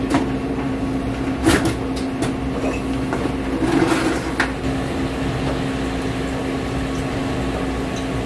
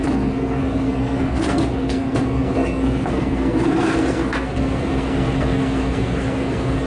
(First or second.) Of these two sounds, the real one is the first